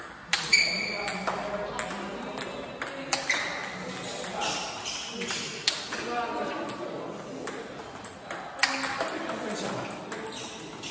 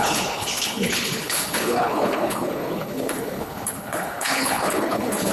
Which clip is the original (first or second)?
first